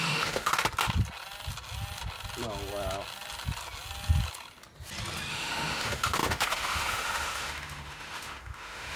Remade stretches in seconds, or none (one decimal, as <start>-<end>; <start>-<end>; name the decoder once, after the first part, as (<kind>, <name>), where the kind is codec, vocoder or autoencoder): 0.0-0.5 (autoencoder, DAC-VAE); 5.3-9.0